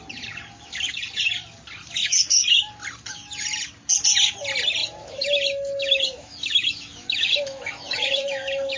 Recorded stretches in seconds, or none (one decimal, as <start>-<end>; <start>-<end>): 0.0-2.0; 2.7-4.8